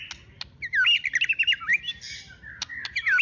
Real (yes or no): yes